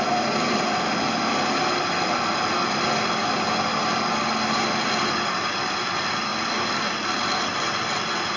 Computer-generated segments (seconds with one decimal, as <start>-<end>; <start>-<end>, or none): none